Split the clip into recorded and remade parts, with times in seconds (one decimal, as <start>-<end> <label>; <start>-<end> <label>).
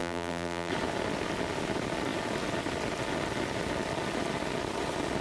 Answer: 0.0-0.7 remade; 0.7-5.2 recorded